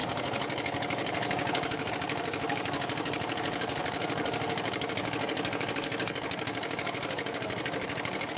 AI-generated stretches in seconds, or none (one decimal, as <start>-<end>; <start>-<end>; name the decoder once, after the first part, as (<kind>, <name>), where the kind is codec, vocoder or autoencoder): 0.0-8.4 (codec, DAC)